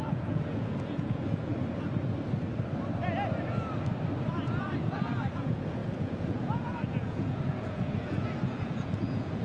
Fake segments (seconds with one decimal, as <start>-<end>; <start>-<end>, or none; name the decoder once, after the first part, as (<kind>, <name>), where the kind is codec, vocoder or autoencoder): 0.0-1.5 (vocoder, Vocos); 4.8-9.4